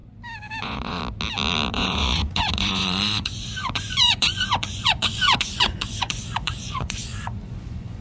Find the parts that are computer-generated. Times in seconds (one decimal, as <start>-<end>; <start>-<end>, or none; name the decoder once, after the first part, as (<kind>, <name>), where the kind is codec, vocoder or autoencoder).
0.6-1.0 (vocoder, Vocos); 1.7-8.0